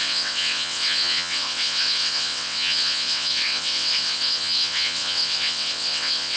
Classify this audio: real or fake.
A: fake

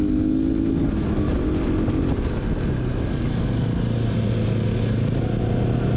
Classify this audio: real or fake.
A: real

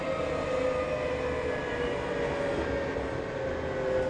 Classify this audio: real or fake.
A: real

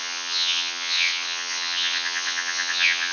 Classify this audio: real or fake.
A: fake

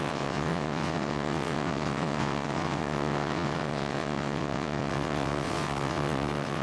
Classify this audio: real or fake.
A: fake